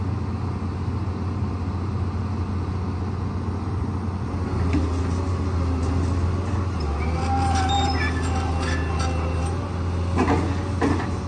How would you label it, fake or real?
real